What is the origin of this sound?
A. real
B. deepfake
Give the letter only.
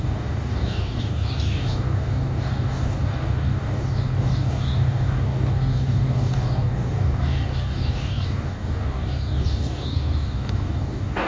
B